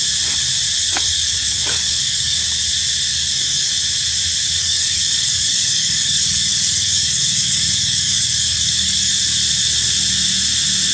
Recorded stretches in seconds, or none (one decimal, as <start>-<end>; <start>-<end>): 0.0-0.8; 2.4-3.1; 3.7-4.6; 9.1-10.9